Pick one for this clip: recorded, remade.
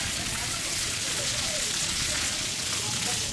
remade